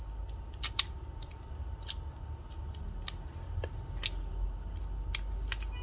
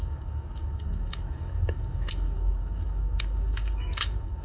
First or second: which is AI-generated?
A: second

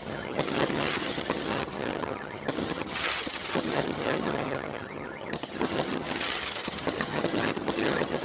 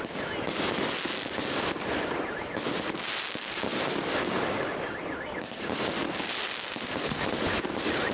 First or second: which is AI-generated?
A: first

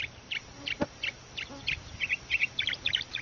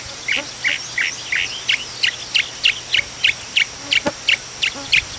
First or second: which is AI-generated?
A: first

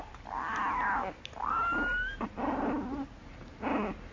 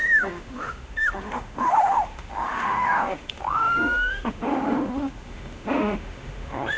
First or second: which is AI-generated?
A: second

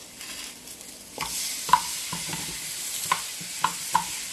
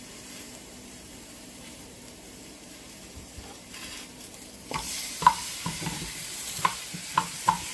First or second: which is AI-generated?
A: second